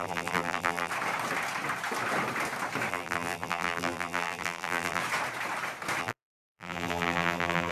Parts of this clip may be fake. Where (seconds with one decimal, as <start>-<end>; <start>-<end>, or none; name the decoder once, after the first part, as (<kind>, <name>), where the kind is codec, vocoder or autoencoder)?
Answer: 0.0-0.9 (vocoder, BigVGAN v2); 2.9-5.0; 6.0-7.7